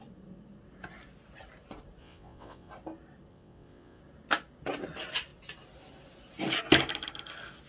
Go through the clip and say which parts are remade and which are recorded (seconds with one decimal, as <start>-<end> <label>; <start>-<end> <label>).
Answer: 0.0-2.0 recorded; 2.0-2.7 remade; 2.7-3.3 recorded; 3.3-4.0 remade; 4.0-7.7 recorded